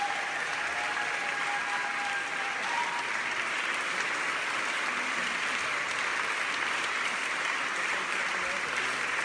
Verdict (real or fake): real